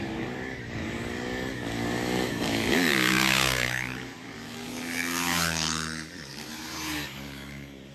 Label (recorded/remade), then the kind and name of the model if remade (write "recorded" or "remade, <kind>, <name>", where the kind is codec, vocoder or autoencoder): remade, codec, DAC